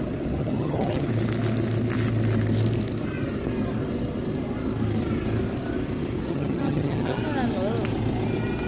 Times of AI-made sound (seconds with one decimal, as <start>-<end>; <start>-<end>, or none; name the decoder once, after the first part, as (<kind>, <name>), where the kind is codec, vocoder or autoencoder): 0.4-1.1 (vocoder, HiFi-GAN); 6.3-7.2